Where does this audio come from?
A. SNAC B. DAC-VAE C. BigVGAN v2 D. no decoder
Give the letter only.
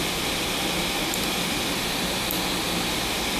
D